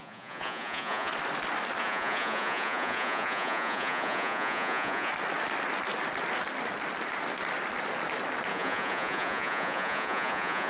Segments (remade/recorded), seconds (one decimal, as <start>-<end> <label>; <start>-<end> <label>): 0.0-1.1 remade; 1.1-1.8 recorded; 1.8-5.1 remade; 5.1-8.5 recorded; 8.5-10.7 remade